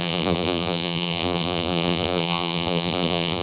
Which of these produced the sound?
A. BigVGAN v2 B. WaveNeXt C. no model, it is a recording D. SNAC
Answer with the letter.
A